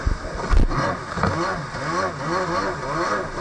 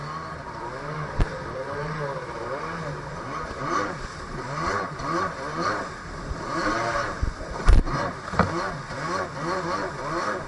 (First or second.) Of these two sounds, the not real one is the second